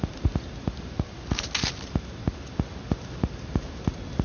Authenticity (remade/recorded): recorded